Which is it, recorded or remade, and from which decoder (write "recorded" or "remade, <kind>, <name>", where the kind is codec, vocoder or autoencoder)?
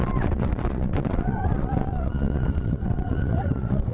remade, vocoder, WaveNeXt